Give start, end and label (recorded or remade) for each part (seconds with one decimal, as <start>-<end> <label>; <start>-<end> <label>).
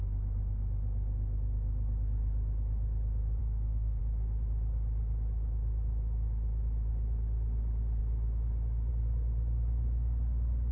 0.0-3.4 recorded; 3.4-4.0 remade; 4.0-10.7 recorded